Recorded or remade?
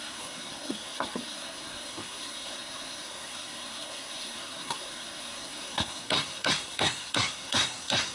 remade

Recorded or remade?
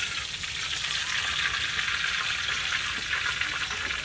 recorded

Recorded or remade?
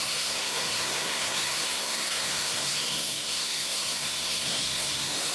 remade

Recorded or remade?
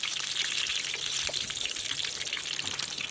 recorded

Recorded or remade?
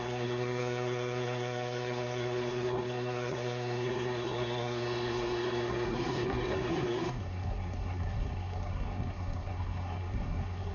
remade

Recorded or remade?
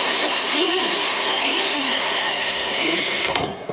remade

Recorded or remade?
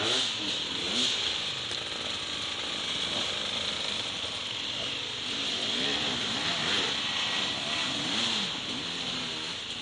recorded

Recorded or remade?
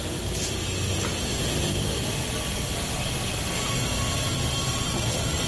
recorded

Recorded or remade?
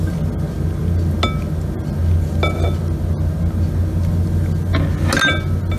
recorded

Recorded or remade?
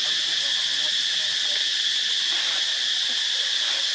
recorded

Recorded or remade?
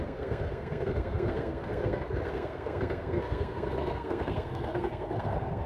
remade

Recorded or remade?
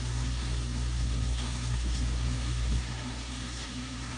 remade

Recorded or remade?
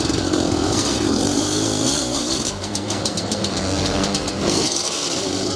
remade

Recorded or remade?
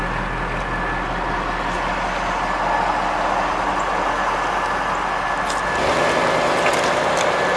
recorded